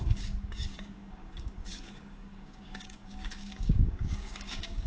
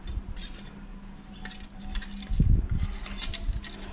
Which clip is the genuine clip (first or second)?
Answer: second